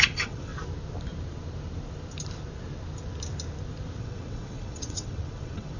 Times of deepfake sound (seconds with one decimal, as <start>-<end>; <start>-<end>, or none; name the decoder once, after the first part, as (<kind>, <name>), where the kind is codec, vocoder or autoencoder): 0.0-0.5 (vocoder, WaveNeXt); 4.0-5.8